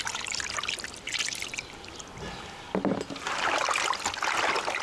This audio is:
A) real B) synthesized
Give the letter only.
A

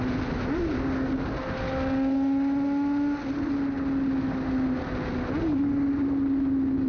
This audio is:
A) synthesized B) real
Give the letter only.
B